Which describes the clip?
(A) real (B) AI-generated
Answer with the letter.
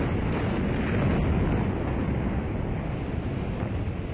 A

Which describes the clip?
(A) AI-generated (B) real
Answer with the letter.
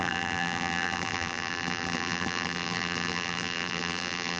A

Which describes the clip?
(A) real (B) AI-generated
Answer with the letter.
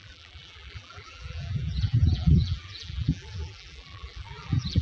B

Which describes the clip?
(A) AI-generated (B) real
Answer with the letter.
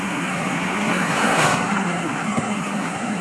A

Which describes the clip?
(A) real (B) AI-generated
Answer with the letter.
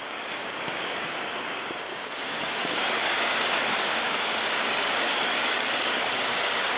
B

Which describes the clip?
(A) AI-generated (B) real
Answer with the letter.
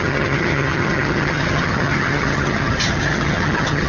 A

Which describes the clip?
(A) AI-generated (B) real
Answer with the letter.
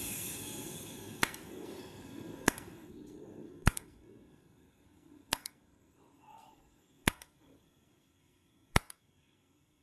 A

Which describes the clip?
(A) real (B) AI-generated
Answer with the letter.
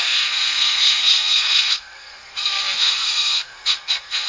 B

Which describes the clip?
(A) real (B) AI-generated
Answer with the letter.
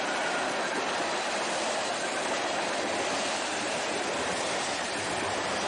A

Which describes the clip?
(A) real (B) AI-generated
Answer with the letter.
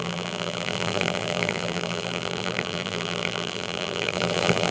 B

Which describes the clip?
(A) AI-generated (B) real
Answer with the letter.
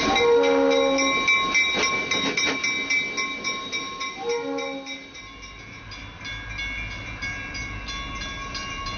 B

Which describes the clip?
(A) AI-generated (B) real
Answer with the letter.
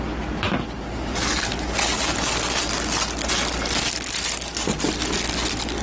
B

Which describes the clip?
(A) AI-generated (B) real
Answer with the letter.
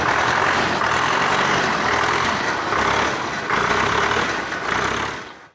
B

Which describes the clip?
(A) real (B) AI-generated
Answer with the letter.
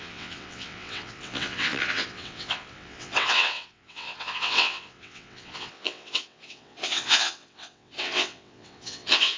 B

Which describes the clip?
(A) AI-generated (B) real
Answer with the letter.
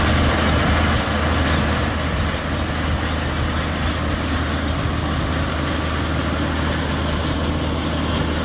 B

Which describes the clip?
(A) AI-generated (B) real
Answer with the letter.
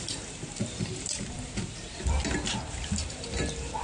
B